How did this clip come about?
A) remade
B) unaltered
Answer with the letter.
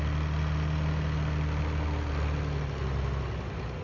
B